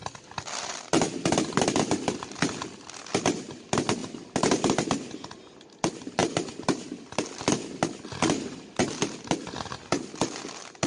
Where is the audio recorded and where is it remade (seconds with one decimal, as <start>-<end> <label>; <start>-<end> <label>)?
0.0-10.9 recorded